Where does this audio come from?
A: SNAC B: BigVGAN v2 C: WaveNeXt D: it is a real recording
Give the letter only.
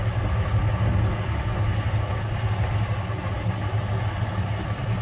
D